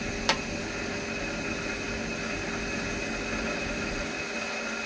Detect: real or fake real